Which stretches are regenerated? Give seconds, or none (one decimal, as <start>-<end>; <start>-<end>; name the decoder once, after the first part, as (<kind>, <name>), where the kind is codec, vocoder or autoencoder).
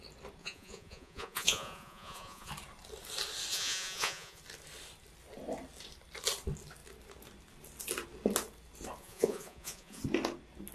0.4-2.5 (vocoder, Vocos); 3.5-4.4; 9.0-10.0